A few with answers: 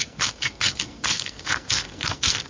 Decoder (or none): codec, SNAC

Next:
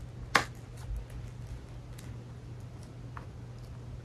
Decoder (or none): none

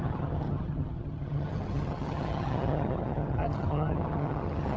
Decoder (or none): vocoder, HiFi-GAN